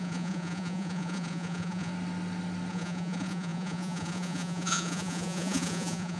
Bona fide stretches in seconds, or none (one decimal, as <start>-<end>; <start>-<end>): 1.9-2.7